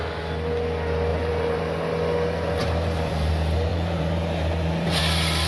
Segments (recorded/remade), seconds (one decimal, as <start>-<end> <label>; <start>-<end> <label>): 0.0-1.1 recorded; 1.1-1.6 remade; 1.6-2.6 recorded; 2.6-3.3 remade; 3.3-3.7 recorded; 3.7-5.0 remade; 5.0-5.5 recorded